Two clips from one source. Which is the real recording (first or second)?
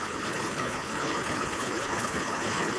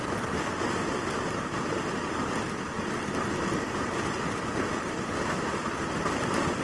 second